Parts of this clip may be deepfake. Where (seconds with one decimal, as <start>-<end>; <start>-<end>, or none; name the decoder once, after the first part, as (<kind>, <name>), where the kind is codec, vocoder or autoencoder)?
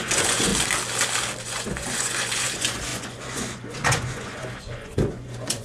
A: 0.0-0.5 (vocoder, Vocos); 1.4-5.6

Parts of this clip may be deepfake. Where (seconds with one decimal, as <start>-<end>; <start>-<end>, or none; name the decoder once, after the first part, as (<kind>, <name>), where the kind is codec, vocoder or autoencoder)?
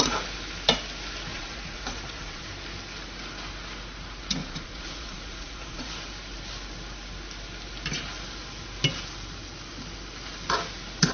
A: 1.3-2.5 (vocoder, Vocos); 4.4-5.9